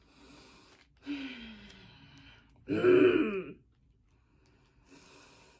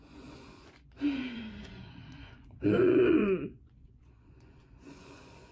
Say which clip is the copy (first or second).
second